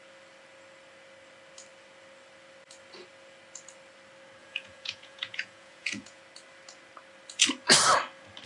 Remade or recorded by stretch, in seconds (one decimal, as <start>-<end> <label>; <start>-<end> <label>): 0.0-4.4 recorded; 4.4-6.2 remade; 6.2-8.5 recorded